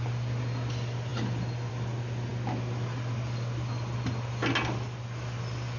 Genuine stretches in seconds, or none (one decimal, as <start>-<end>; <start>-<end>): 0.0-5.8